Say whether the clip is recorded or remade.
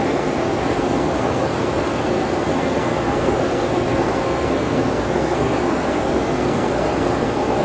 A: remade